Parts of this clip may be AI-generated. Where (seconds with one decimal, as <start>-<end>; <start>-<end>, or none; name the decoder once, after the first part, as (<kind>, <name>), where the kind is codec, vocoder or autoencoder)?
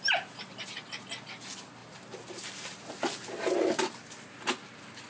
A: none